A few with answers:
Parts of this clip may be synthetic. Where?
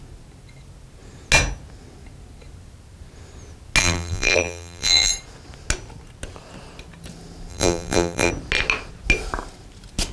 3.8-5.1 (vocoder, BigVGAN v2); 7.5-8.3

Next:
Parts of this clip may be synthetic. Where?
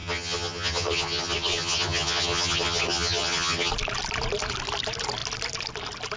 0.0-3.7 (vocoder, HiFi-GAN)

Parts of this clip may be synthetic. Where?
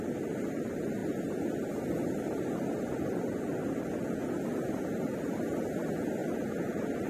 none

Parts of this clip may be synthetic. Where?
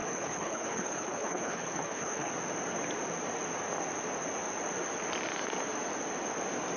0.0-2.3 (codec, HILCodec)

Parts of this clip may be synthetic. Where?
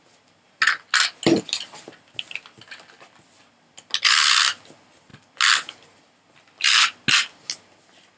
none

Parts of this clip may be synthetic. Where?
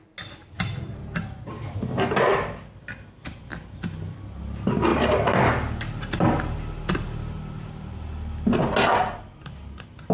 2.3-3.2 (vocoder, BigVGAN v2); 4.9-8.6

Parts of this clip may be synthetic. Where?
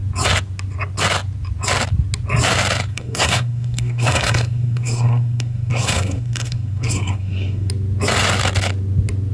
2.9-7.7 (codec, SNAC)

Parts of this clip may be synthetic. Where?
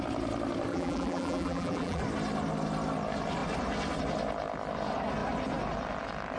0.7-2.0 (vocoder, BigVGAN v2)